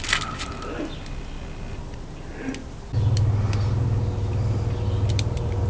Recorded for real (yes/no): yes